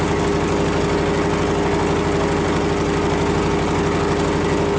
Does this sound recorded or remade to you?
recorded